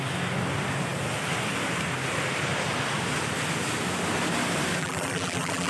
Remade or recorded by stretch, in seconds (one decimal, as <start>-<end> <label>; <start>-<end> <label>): 0.0-4.8 recorded; 4.8-5.7 remade